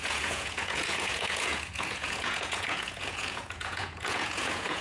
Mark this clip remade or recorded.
remade